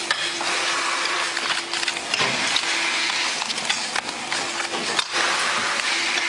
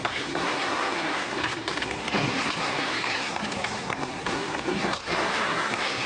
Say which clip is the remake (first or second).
second